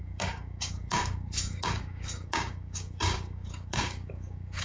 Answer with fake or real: fake